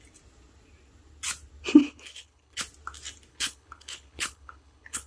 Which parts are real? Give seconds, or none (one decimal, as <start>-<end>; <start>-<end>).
0.0-1.8; 2.6-3.3